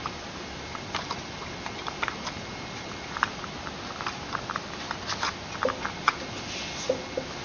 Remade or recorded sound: recorded